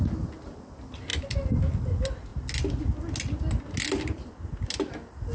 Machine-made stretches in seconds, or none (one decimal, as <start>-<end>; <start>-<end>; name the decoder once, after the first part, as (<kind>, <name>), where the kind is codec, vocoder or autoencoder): none